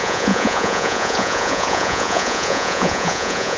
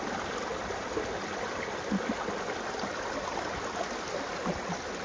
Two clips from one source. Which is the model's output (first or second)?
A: first